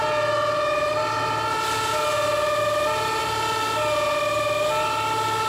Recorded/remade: remade